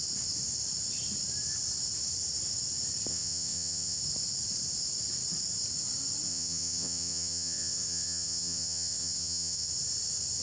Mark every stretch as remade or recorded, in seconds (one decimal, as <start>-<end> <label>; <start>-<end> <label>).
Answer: 0.0-3.1 recorded; 3.1-4.0 remade; 4.0-6.3 recorded; 6.3-9.7 remade; 9.7-10.4 recorded